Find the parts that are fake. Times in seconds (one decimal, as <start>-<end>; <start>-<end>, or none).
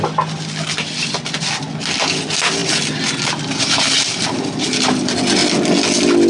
none